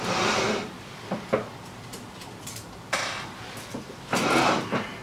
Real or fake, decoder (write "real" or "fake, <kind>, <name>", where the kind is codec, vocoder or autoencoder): real